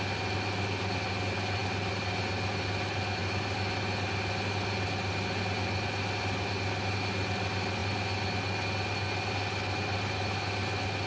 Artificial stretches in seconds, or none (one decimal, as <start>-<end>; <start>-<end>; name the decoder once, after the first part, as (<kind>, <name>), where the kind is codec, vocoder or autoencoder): none